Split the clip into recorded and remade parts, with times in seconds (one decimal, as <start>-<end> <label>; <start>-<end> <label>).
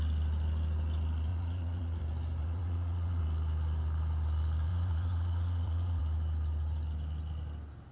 0.0-1.3 recorded; 1.3-2.0 remade; 2.0-2.4 recorded; 2.4-3.2 remade; 3.2-4.7 recorded; 4.7-6.0 remade; 6.0-7.9 recorded